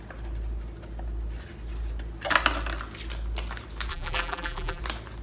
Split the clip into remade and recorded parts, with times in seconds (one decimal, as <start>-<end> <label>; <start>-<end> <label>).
0.0-3.9 recorded; 3.9-4.8 remade; 4.8-5.2 recorded

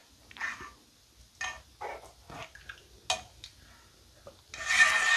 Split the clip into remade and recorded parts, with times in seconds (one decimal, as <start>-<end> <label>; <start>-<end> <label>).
0.0-5.2 recorded

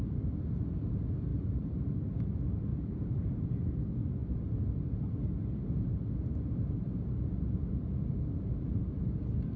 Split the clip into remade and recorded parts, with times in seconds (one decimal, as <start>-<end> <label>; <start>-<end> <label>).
0.0-1.3 recorded; 1.3-2.1 remade; 2.1-2.7 recorded; 2.7-3.6 remade; 3.6-9.6 recorded